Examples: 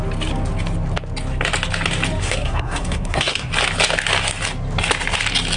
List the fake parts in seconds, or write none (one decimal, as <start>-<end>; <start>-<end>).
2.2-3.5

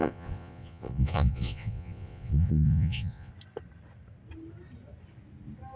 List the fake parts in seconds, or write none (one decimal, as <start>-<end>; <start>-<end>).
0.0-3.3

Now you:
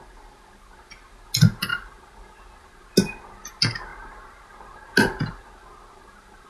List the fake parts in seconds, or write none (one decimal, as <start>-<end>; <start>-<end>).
none

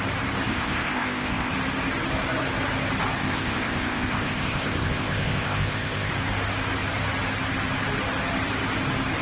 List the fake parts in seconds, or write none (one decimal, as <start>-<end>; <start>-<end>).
0.5-1.5; 3.2-6.1

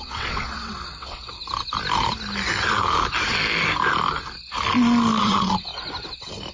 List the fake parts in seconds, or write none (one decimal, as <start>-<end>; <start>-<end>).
0.0-1.4; 5.2-5.7

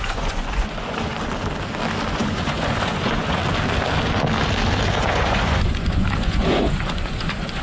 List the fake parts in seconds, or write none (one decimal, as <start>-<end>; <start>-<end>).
0.0-1.1; 2.1-3.4; 5.0-7.6

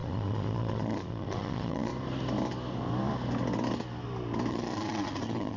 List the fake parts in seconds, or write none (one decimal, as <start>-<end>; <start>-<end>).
0.0-1.9; 4.5-5.6